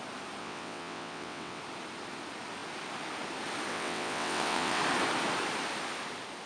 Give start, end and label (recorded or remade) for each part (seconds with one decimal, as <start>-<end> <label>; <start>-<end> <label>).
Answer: 0.0-0.4 recorded; 0.4-1.6 remade; 1.6-3.7 recorded; 3.7-4.8 remade; 4.8-6.5 recorded